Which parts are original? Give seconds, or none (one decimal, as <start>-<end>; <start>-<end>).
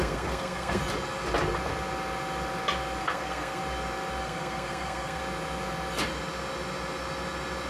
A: 0.8-3.0; 3.6-4.2; 5.2-7.7